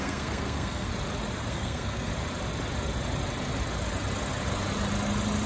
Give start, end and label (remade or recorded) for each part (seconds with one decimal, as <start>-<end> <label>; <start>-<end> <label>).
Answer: 0.0-0.9 remade; 0.9-1.5 recorded; 1.5-2.1 remade; 2.1-5.5 recorded